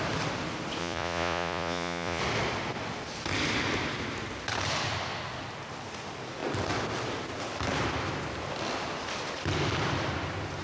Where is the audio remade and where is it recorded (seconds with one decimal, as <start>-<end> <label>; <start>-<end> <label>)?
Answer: 0.0-0.8 recorded; 0.8-2.2 remade; 2.2-10.6 recorded